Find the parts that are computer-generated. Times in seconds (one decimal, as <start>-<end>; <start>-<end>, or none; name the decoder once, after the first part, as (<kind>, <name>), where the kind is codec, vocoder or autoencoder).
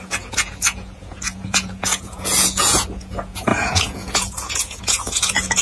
0.0-5.6 (vocoder, Vocos)